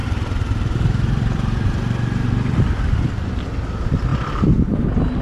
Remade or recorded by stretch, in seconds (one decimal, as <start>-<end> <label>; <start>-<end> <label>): 0.0-3.1 remade; 3.1-4.1 recorded; 4.1-4.8 remade; 4.8-5.2 recorded